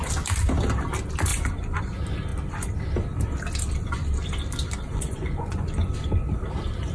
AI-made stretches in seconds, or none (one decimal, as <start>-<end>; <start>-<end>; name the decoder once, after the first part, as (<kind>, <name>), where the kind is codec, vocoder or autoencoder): 1.3-1.8 (vocoder, Vocos); 4.9-5.9